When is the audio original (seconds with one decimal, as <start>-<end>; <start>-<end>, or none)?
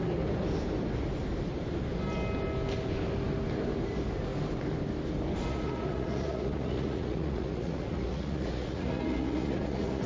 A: 0.0-5.5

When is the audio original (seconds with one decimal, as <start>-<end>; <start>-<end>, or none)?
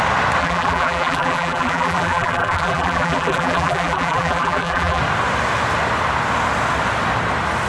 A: 0.0-0.4; 5.0-7.7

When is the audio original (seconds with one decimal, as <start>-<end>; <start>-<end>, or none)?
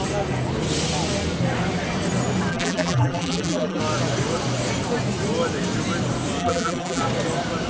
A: 0.0-2.5; 3.8-6.4; 7.0-7.7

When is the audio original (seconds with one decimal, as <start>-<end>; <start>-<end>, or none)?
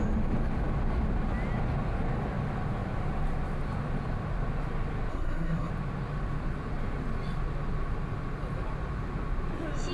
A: 0.0-5.1; 5.7-9.9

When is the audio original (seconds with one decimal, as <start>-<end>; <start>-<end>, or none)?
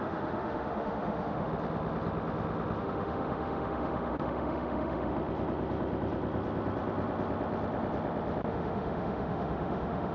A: 1.5-2.8; 5.1-8.5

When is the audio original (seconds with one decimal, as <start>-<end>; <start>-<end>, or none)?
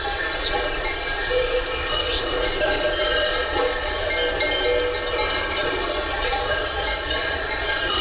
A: 4.0-5.6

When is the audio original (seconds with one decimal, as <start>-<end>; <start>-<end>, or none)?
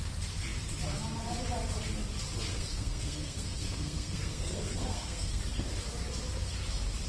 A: 0.0-2.5; 5.4-7.1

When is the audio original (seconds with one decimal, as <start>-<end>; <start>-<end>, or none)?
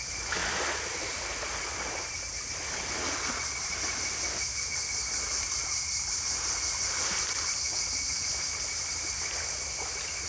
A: 0.0-10.3